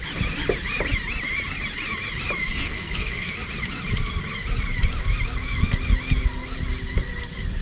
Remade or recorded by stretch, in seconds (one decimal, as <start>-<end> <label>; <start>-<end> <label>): 0.0-2.5 recorded; 2.5-3.3 remade; 3.3-7.6 recorded